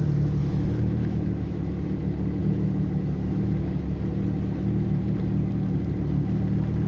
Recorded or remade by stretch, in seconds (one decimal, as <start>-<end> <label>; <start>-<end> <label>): 0.0-0.4 recorded; 0.4-1.7 remade; 1.7-2.4 recorded; 2.4-3.7 remade; 3.7-6.9 recorded